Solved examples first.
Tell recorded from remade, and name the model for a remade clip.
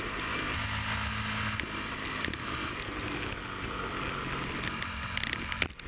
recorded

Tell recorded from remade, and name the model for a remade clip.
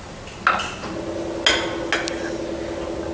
recorded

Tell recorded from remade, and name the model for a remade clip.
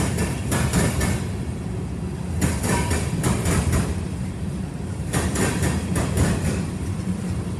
remade, vocoder, BigVGAN v2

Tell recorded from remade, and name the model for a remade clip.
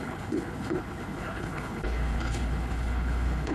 remade, codec, HILCodec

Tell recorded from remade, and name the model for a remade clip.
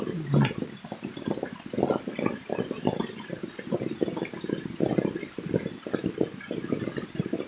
recorded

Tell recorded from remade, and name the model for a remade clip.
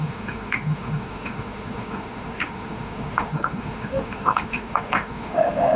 remade, autoencoder, DAC-VAE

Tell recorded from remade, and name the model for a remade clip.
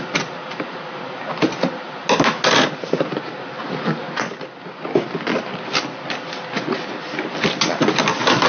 recorded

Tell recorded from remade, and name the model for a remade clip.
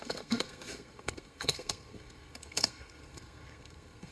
remade, codec, SNAC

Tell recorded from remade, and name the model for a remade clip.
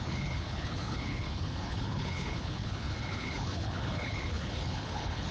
remade, codec, HILCodec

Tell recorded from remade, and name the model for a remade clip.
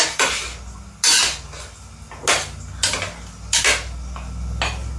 recorded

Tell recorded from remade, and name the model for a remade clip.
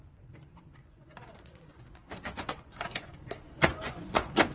remade, vocoder, Vocos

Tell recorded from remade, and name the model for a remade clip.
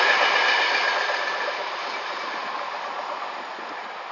recorded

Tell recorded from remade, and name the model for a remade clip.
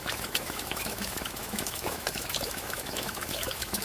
remade, autoencoder, DAC-VAE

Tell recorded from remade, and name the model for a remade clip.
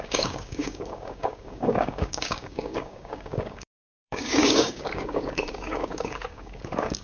remade, codec, DAC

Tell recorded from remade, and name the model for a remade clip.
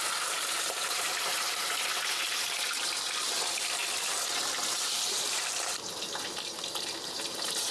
remade, vocoder, BigVGAN v2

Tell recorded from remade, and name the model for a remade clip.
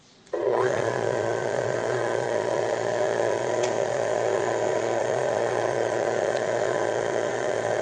remade, vocoder, Vocos